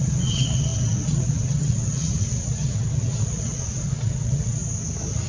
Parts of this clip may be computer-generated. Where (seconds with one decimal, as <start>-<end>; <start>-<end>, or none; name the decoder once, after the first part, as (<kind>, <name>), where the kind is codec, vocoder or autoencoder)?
0.0-4.6 (vocoder, WaveNeXt)